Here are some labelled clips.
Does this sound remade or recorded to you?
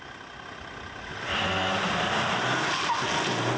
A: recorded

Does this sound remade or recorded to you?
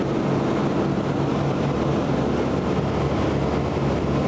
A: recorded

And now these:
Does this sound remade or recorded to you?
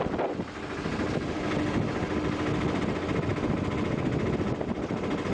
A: recorded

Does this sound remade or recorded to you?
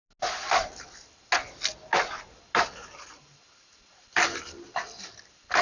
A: recorded